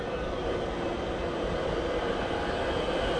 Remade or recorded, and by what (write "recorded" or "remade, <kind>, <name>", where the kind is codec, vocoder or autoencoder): recorded